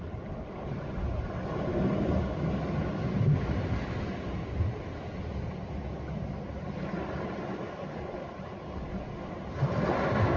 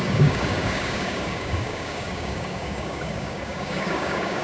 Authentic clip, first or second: first